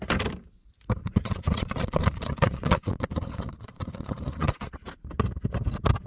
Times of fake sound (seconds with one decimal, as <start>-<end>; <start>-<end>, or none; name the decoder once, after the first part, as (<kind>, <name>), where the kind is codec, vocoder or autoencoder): 1.0-4.7 (vocoder, Vocos)